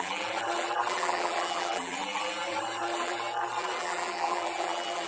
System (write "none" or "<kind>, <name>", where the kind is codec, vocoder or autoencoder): vocoder, BigVGAN v2